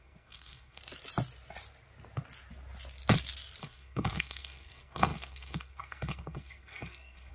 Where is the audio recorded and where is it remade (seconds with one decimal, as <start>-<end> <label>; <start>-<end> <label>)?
0.0-0.8 remade; 0.8-3.6 recorded; 3.6-7.3 remade